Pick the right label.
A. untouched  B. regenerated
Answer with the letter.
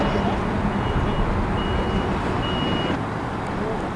A